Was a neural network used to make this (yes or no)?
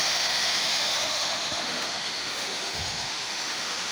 yes